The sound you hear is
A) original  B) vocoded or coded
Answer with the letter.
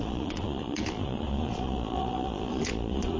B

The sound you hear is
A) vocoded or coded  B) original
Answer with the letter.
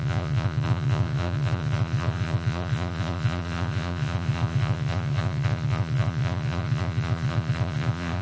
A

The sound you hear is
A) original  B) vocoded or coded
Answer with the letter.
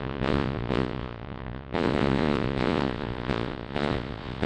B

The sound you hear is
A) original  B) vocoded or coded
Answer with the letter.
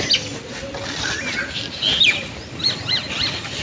A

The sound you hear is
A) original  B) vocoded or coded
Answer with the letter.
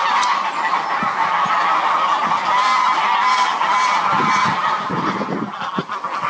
A